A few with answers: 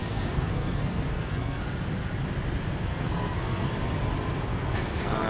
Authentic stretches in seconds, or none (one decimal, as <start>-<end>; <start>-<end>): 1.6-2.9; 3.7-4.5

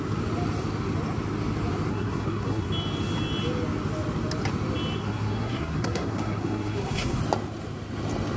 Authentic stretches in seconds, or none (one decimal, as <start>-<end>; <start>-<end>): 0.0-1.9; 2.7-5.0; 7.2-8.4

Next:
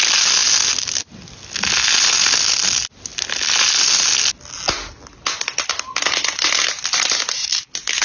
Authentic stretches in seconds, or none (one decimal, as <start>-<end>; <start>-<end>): 0.0-8.0

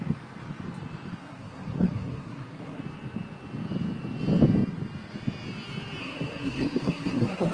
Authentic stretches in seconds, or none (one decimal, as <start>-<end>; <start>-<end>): 0.0-1.2; 2.8-6.0

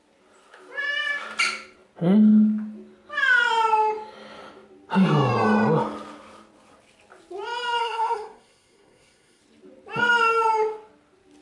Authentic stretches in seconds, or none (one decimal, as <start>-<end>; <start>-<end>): 0.0-7.8; 9.4-11.4

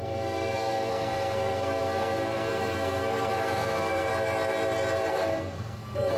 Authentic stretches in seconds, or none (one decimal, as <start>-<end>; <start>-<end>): 4.1-5.1

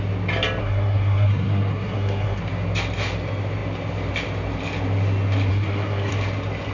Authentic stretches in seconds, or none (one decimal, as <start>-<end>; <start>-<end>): 0.0-0.6; 2.4-5.5; 6.1-6.7

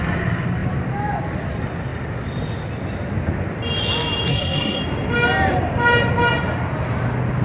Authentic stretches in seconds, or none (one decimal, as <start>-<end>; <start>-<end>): 0.0-4.3; 4.8-7.4